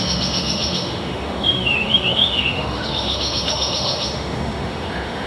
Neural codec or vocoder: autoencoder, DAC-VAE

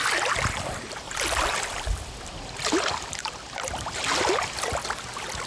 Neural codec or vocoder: none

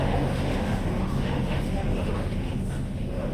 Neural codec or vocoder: autoencoder, DAC-VAE